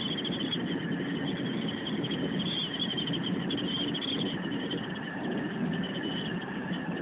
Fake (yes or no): no